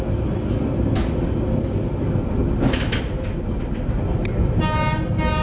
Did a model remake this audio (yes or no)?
no